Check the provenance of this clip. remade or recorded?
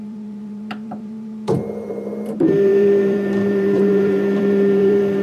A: remade